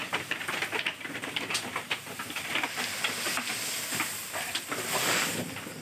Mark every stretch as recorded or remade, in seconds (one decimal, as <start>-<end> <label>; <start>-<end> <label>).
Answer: 0.0-5.8 recorded